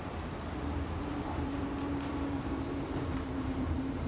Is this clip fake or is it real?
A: fake